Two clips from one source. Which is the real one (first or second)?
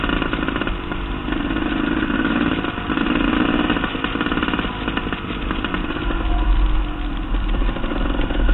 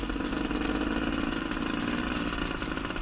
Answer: second